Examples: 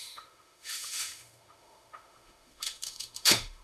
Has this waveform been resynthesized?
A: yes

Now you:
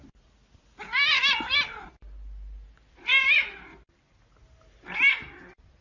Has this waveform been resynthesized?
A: no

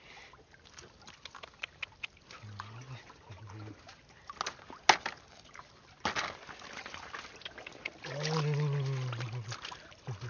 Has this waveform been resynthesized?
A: no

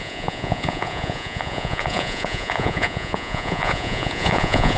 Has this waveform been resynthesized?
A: yes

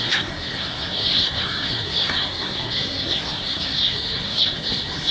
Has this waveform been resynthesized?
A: yes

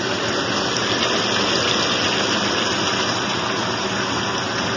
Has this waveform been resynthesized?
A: no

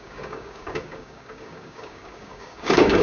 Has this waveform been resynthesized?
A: yes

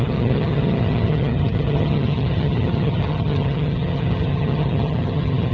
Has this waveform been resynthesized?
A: yes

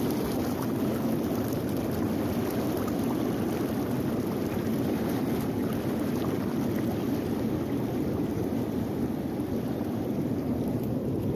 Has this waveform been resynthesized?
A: no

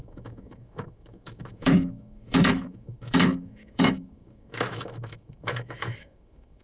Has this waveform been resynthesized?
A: yes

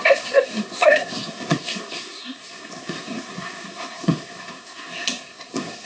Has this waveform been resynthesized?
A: yes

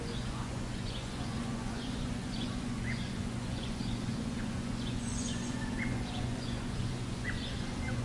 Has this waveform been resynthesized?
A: yes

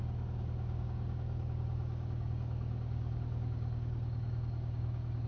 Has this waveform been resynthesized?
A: yes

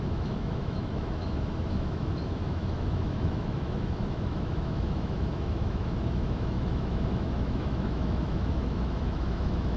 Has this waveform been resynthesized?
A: yes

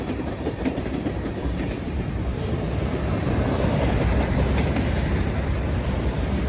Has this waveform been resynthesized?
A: yes